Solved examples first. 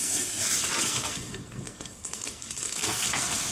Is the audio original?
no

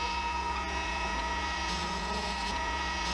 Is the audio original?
no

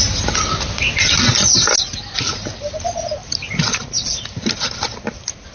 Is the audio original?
yes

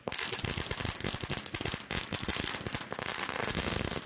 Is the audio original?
yes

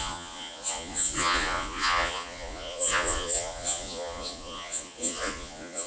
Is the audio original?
no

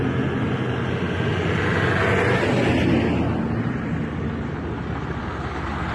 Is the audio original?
yes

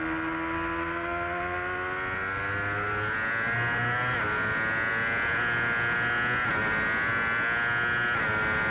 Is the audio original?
yes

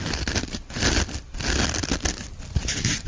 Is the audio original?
yes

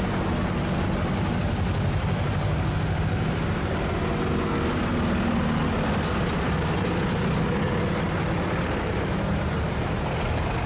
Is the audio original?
yes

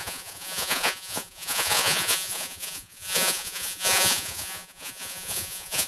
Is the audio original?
no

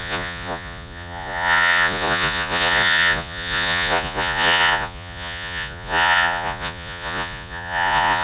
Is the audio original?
no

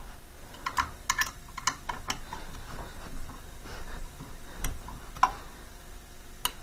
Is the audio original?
yes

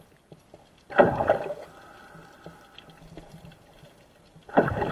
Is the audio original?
yes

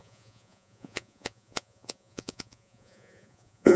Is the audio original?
no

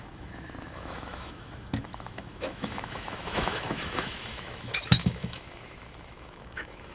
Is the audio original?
no